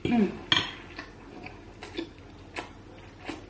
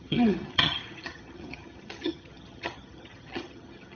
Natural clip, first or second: first